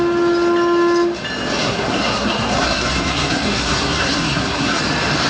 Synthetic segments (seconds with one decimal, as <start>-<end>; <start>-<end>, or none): 1.6-4.8